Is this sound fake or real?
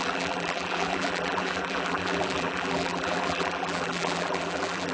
fake